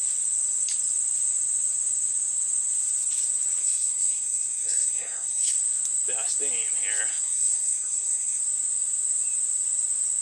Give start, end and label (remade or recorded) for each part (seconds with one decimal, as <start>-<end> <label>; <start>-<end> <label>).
0.0-3.6 recorded; 3.6-5.6 remade; 5.6-7.1 recorded; 7.1-8.4 remade; 8.4-10.2 recorded